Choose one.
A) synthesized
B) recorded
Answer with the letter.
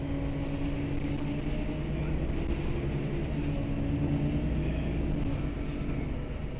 B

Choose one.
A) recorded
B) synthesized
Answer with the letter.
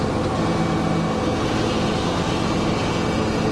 A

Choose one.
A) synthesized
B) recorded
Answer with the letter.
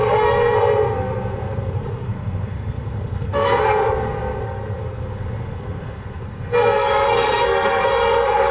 A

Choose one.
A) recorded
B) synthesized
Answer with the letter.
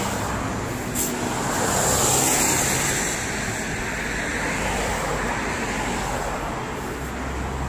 A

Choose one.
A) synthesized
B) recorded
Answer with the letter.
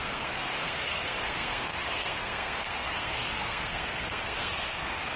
A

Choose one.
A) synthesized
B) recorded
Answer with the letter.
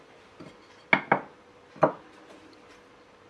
B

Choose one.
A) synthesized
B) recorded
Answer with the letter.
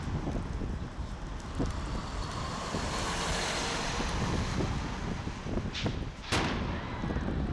B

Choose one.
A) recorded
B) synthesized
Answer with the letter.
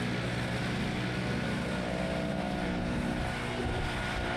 A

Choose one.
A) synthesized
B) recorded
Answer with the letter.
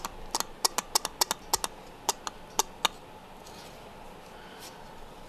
B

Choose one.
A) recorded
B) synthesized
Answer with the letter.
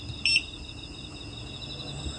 A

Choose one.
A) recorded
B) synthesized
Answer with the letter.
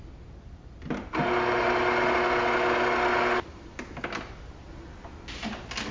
A